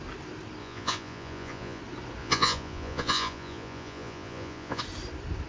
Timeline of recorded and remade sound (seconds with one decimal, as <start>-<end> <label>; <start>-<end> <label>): 0.0-0.6 recorded; 0.6-1.8 remade; 1.8-2.2 recorded; 2.2-4.8 remade; 4.8-5.5 recorded